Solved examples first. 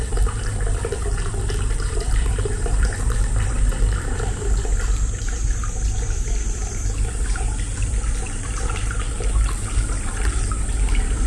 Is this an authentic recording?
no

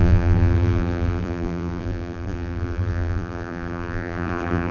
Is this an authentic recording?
no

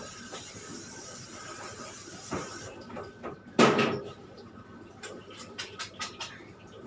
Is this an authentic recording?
no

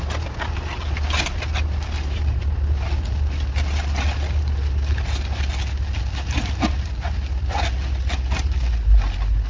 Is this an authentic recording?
yes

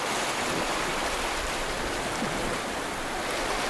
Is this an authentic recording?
yes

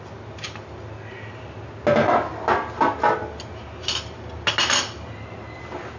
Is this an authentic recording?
yes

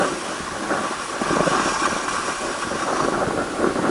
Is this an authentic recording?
yes